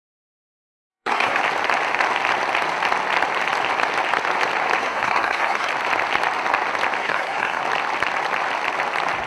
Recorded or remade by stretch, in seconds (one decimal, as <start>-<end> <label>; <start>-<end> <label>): 0.0-0.9 recorded; 0.9-1.4 remade; 1.4-4.8 recorded; 4.8-5.7 remade; 5.7-7.0 recorded; 7.0-7.6 remade; 7.6-9.3 recorded